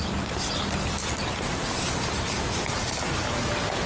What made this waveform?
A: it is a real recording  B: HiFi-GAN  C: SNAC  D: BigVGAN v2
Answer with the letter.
A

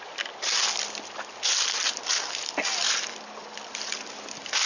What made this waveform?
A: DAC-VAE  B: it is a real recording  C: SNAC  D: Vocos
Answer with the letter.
B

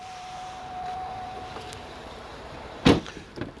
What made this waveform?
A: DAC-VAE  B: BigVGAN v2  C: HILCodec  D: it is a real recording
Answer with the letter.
B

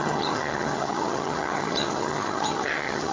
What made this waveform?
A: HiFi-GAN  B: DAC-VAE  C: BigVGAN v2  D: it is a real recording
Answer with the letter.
A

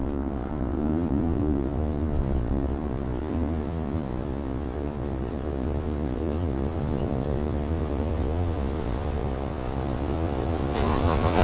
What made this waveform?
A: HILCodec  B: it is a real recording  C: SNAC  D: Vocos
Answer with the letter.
D